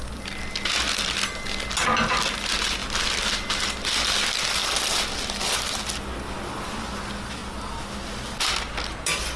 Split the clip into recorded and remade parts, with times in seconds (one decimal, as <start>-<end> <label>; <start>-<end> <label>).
0.0-9.4 recorded

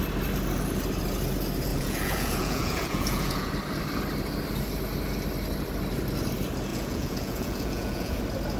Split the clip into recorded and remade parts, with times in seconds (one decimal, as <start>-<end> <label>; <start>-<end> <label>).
0.0-1.7 recorded; 1.7-3.5 remade; 3.5-6.7 recorded; 6.7-8.2 remade; 8.2-8.6 recorded